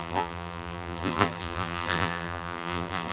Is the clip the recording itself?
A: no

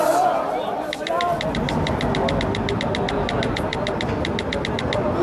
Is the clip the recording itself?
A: yes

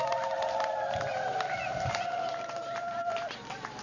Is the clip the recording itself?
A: no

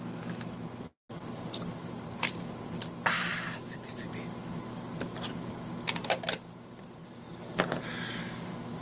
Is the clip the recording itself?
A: yes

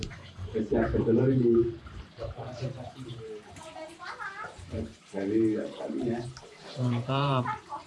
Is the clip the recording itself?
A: no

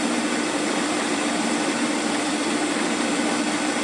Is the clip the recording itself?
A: yes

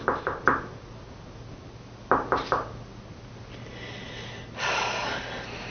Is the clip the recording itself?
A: yes